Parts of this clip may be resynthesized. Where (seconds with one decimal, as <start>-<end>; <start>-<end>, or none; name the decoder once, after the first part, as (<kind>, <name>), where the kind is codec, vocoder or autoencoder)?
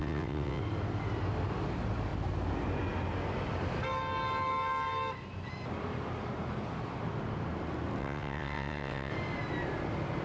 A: 0.0-0.6 (vocoder, WaveNeXt); 8.0-9.1